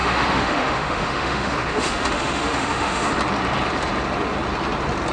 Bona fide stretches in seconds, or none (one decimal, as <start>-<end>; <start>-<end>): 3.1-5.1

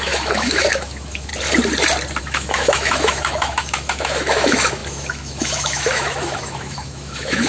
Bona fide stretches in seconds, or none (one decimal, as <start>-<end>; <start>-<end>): 1.3-2.2

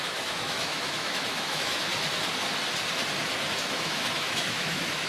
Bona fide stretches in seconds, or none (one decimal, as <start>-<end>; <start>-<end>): 1.9-3.7

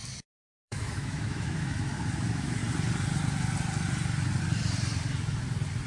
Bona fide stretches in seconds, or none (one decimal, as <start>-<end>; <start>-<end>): 0.0-0.6; 2.6-5.9

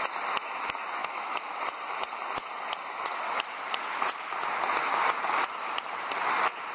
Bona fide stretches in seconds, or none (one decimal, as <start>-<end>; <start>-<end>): 0.0-1.0; 1.6-6.7

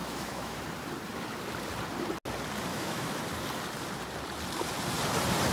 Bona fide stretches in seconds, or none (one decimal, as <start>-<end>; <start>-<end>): 0.6-2.7; 3.2-5.5